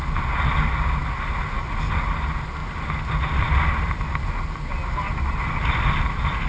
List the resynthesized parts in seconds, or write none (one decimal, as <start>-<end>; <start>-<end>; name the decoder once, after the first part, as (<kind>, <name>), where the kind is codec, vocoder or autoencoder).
none